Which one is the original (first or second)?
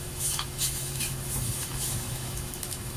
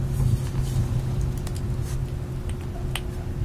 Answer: second